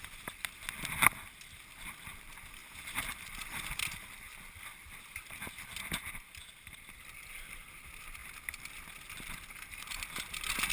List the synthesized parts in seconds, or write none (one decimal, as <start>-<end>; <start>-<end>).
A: none